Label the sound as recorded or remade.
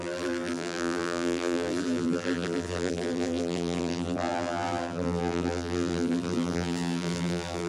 remade